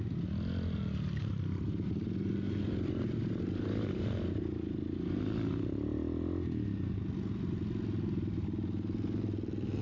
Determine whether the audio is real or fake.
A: real